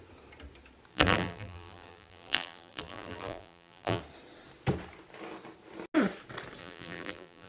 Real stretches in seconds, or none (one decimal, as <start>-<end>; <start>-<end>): 0.0-0.9; 4.0-6.6